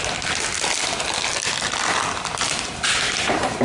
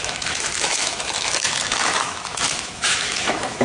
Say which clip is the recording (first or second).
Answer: first